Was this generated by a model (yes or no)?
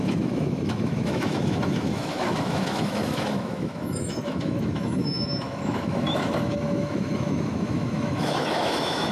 yes